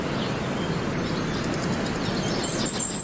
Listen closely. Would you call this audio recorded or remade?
recorded